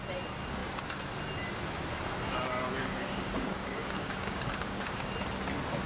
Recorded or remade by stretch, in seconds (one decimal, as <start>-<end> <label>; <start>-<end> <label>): 0.0-2.8 recorded; 2.8-5.1 remade; 5.1-5.9 recorded